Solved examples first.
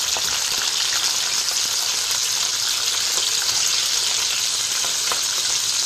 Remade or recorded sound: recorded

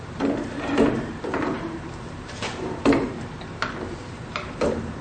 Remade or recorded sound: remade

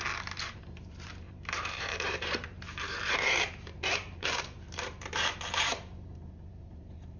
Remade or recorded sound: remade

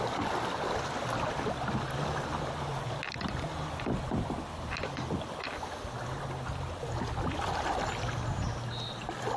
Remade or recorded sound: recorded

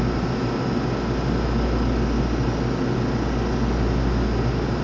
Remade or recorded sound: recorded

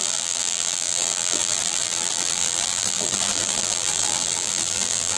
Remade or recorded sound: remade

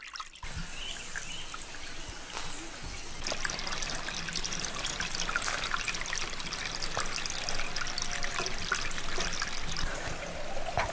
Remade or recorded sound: recorded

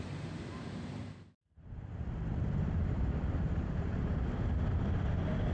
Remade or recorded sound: remade